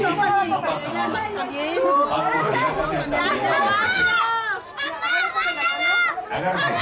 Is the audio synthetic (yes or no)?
no